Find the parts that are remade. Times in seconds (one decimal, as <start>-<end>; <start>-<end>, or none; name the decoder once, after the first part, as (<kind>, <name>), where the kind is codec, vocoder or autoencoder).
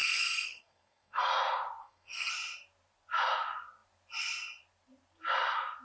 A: 0.0-1.3 (codec, SNAC); 1.8-2.3